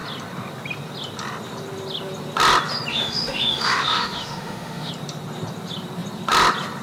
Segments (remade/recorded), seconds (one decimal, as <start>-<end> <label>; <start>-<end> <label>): 0.0-2.9 recorded; 2.9-4.9 remade; 4.9-6.8 recorded